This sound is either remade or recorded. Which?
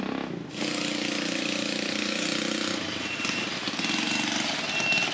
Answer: recorded